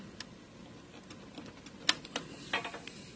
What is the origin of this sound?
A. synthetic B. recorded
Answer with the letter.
B